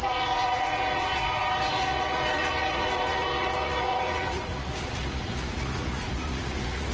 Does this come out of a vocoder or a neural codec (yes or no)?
yes